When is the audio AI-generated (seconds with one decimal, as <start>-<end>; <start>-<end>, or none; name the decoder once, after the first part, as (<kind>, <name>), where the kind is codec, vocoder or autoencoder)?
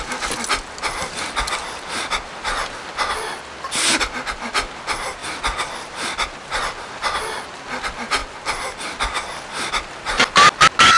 none